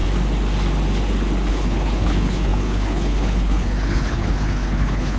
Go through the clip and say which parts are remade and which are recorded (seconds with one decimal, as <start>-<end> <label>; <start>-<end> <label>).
0.0-1.5 recorded; 1.5-5.2 remade